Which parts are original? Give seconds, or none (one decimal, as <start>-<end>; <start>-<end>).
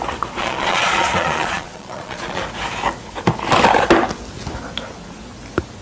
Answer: 0.0-0.4; 2.4-5.8